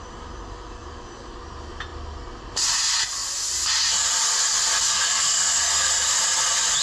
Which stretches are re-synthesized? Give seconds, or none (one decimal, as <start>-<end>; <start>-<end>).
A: 5.1-5.9